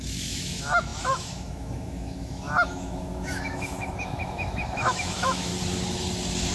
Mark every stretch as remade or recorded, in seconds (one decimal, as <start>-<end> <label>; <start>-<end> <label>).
0.0-5.5 remade; 5.5-6.5 recorded